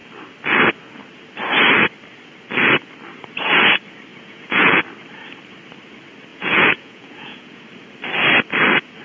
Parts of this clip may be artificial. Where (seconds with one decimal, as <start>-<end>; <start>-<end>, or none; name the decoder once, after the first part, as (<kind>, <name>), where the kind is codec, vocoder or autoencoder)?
4.1-4.8 (vocoder, Vocos); 6.3-7.6